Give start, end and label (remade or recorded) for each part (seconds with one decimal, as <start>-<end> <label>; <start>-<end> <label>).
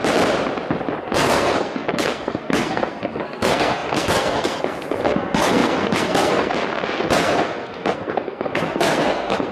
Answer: 0.0-1.0 recorded; 1.0-9.5 remade